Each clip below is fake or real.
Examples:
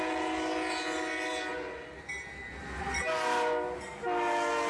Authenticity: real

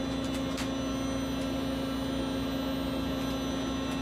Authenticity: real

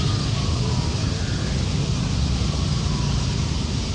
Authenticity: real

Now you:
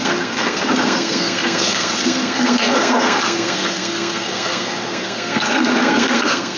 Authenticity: fake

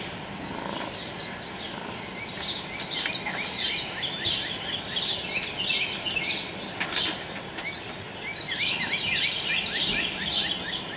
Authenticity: real